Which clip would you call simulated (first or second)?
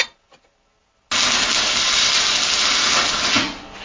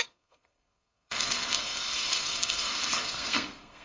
second